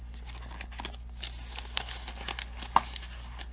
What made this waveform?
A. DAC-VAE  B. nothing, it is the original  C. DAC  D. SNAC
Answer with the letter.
B